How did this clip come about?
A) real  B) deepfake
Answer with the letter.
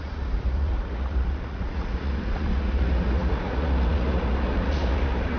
B